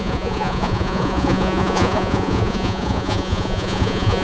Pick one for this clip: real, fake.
fake